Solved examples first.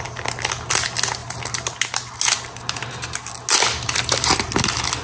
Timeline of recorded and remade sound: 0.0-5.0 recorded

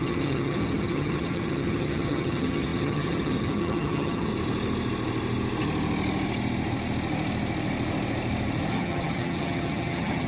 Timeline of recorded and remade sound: 0.0-4.3 remade; 4.3-8.7 recorded; 8.7-10.3 remade